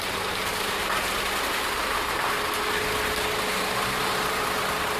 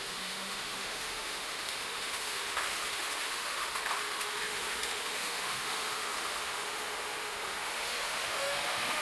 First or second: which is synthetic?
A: second